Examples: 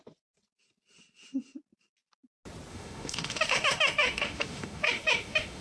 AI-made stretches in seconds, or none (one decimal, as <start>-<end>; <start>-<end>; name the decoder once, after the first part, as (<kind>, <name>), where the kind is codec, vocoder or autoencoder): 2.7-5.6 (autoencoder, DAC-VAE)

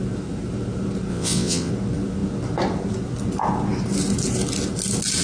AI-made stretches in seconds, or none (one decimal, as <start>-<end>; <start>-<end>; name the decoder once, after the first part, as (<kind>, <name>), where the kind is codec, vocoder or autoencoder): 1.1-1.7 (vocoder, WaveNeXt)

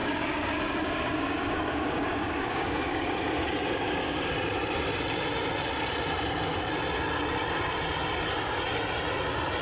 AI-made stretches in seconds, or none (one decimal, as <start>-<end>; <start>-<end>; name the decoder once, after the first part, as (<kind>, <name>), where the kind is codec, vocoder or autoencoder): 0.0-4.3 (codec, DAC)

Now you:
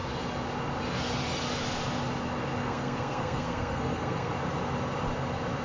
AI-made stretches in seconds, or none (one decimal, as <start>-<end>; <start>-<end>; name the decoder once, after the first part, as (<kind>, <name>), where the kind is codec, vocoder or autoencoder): 2.6-4.3 (codec, SNAC)